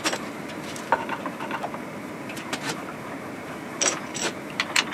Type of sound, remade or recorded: remade